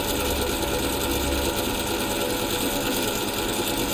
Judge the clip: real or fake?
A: real